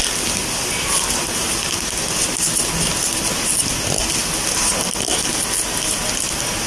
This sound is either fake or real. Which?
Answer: real